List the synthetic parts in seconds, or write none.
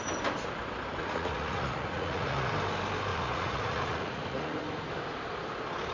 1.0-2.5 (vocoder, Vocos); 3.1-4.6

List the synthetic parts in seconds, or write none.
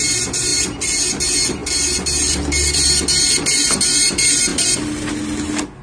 none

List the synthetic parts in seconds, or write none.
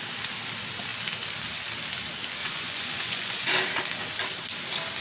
2.4-3.5 (vocoder, Vocos)